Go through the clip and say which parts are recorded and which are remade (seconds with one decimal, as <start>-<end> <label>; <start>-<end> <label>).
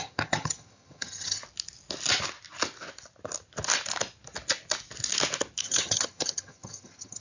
0.0-1.4 remade; 1.4-5.6 recorded; 5.6-7.2 remade